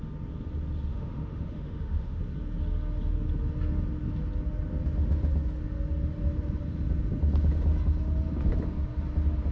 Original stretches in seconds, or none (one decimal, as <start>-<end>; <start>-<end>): 0.0-0.9; 2.2-9.5

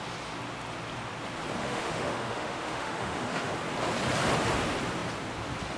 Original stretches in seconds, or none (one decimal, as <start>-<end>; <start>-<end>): 0.0-1.6; 3.5-5.8

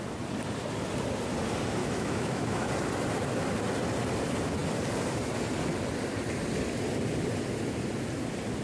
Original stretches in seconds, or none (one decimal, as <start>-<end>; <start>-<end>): 0.0-1.8; 2.7-8.6

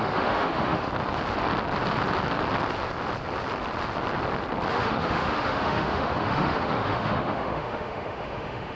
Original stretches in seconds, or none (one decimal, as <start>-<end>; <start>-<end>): 0.9-4.7

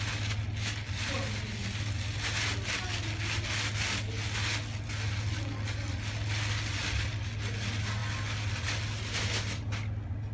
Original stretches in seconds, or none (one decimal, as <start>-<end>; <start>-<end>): 0.0-10.3

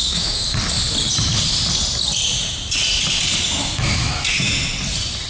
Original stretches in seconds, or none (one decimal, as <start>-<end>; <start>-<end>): 0.4-3.5; 4.7-5.3

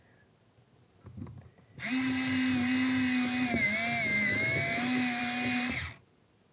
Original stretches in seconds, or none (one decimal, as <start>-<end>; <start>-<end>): 0.0-4.3; 5.2-6.5